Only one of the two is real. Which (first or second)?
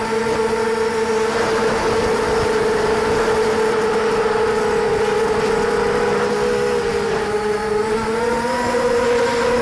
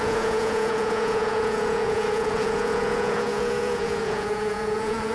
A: first